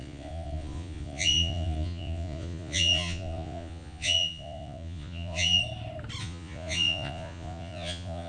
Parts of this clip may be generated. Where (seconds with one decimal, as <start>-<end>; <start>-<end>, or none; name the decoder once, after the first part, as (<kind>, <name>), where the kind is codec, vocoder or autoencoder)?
0.0-5.6 (vocoder, Vocos); 6.2-8.3